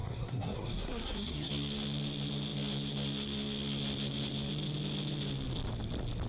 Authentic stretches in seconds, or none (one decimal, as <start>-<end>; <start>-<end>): 1.5-6.3

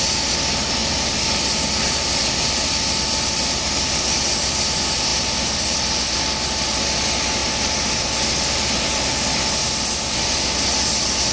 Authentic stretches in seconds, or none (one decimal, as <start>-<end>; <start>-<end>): 0.0-11.3

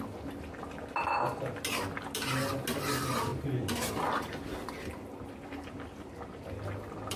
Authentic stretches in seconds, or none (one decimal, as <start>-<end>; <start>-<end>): 0.0-7.2

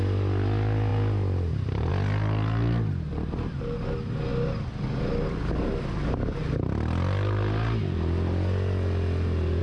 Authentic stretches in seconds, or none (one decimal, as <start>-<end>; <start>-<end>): 0.0-9.6

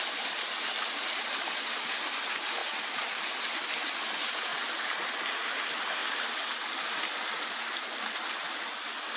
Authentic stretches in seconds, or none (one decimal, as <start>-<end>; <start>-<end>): 0.0-9.2

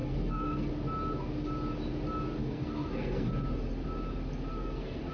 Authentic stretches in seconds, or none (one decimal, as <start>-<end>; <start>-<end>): 0.7-2.4; 3.3-4.5

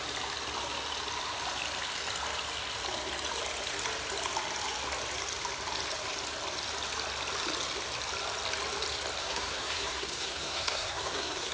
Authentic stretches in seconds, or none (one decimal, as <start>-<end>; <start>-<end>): 0.0-9.2

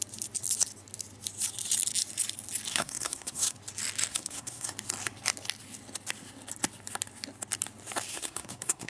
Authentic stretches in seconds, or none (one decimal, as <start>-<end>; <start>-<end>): 0.0-2.7; 3.6-4.1; 4.7-8.1